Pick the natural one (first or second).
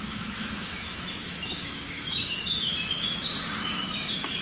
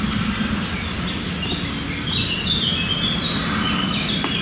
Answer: second